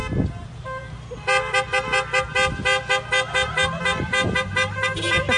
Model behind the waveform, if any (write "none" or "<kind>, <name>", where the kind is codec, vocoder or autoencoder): none